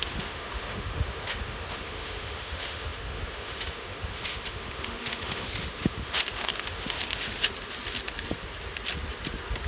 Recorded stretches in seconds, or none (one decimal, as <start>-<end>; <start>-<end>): 7.5-9.7